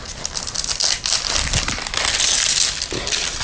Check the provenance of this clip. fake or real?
real